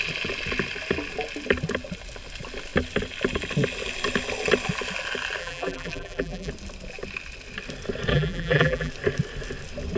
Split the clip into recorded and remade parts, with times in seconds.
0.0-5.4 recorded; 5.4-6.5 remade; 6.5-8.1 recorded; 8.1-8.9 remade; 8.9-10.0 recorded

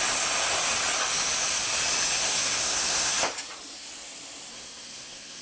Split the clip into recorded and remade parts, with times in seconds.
0.0-2.2 recorded; 2.2-3.1 remade; 3.1-4.5 recorded; 4.5-5.4 remade

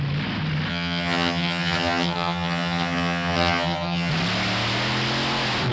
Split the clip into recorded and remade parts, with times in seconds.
0.0-0.7 recorded; 0.7-4.1 remade; 4.1-5.7 recorded